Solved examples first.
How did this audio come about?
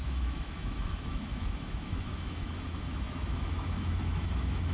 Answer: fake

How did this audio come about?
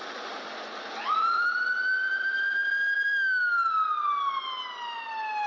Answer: real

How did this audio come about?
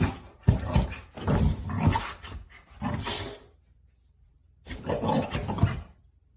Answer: real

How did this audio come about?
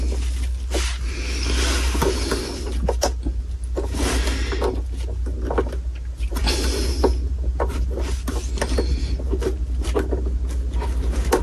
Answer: real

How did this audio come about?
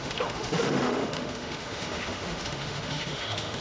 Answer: fake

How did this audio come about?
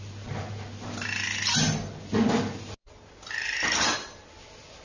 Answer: real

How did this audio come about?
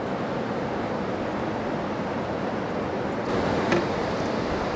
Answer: real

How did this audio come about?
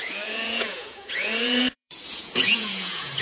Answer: fake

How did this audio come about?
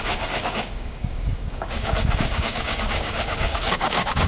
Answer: fake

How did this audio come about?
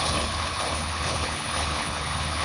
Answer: fake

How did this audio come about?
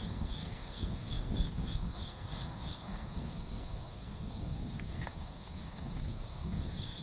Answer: fake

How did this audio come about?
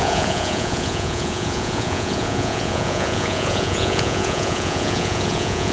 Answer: fake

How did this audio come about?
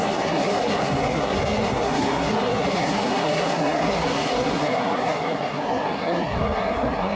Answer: fake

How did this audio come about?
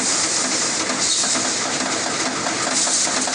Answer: real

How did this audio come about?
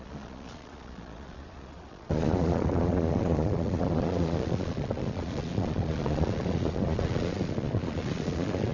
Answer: fake